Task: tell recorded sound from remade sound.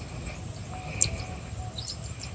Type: recorded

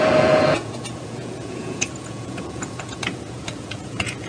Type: remade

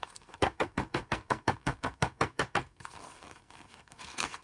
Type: remade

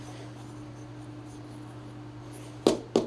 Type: recorded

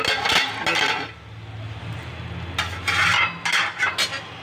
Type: recorded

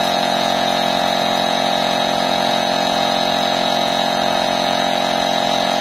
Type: remade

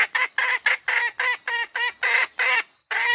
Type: recorded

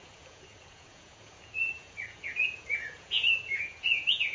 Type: remade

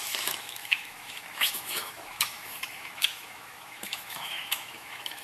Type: remade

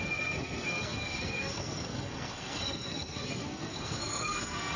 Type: remade